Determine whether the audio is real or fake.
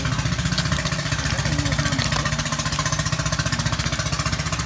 real